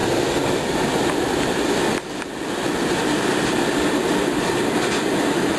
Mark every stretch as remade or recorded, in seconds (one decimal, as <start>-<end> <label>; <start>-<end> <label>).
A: 0.0-5.6 recorded